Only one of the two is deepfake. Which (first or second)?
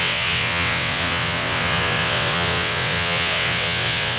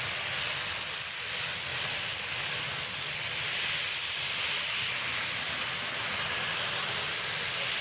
first